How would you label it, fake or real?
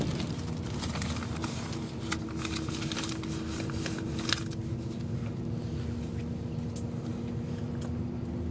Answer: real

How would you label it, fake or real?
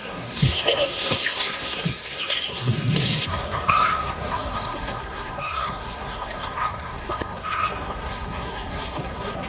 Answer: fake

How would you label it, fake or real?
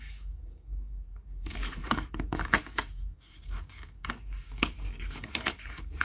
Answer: fake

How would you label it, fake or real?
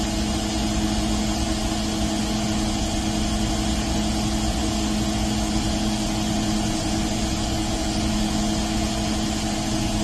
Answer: real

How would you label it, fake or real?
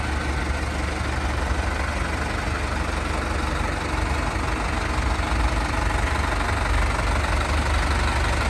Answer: real